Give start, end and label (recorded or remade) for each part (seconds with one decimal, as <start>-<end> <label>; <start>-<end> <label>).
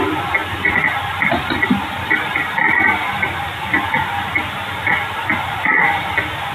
0.0-0.4 recorded; 0.4-1.6 remade; 1.6-6.5 recorded